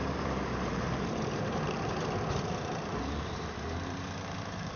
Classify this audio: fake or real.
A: fake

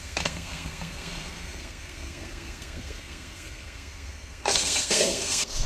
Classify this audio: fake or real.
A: fake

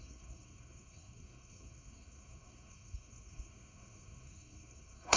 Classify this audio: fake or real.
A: fake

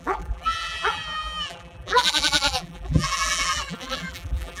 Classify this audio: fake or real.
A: fake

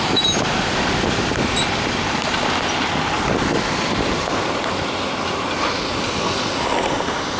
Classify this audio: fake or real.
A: real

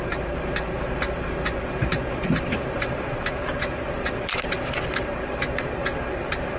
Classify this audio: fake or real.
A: real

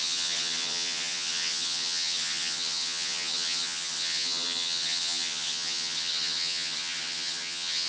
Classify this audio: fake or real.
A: fake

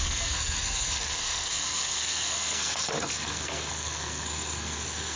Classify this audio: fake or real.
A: fake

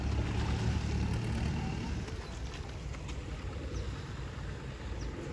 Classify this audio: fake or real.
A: real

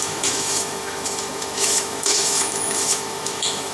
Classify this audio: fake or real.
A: fake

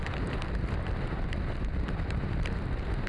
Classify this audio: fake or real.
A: real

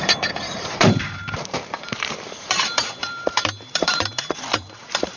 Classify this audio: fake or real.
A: fake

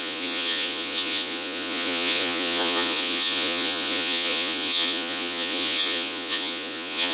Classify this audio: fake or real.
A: fake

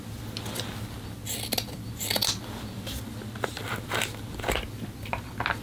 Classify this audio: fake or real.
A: real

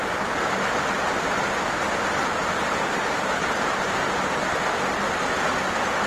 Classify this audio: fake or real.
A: real